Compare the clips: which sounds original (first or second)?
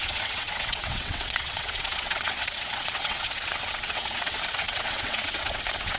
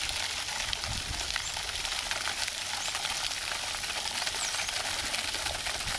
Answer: second